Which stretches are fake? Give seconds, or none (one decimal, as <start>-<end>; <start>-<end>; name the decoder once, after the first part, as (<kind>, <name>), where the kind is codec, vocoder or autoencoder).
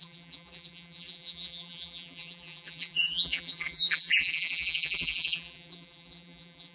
0.0-6.7 (vocoder, BigVGAN v2)